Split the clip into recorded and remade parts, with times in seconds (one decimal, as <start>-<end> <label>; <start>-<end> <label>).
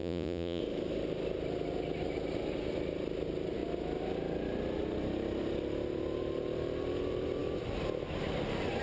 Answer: 0.0-0.6 remade; 0.6-8.8 recorded